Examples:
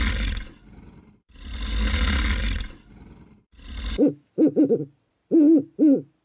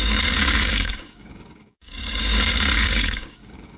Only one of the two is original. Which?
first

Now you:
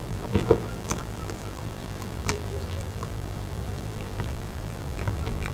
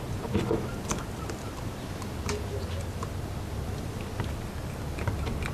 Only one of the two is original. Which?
second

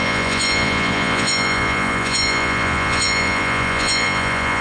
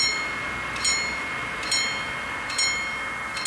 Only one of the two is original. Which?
second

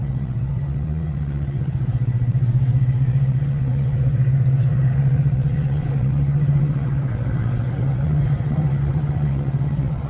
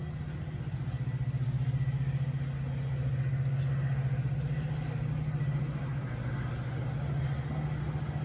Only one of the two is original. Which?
second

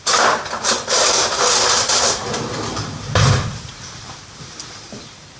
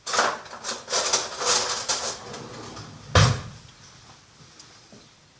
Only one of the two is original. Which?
second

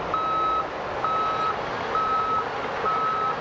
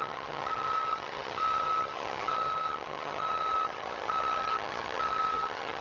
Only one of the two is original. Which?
first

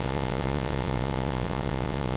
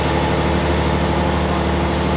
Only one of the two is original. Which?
second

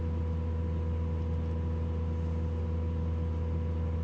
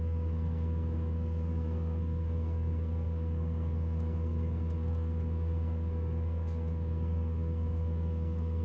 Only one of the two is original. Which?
first